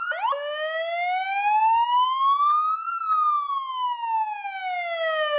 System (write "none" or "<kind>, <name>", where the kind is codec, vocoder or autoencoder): none